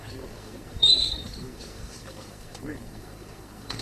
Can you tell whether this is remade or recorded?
remade